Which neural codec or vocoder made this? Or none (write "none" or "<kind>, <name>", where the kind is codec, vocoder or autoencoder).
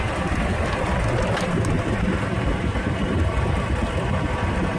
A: none